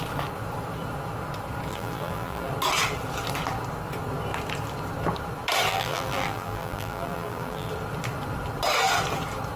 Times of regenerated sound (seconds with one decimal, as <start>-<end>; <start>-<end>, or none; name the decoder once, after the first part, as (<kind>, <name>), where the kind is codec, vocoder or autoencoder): 1.7-2.5 (vocoder, BigVGAN v2); 5.7-7.7